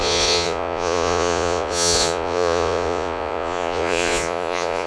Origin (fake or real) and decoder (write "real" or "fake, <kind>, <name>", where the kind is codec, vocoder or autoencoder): fake, vocoder, Vocos